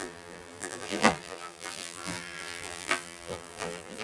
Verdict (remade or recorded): remade